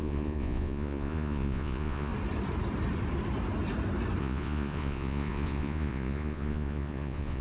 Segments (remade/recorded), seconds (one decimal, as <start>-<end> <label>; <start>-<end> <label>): 0.0-2.1 remade; 2.1-4.2 recorded; 4.2-7.4 remade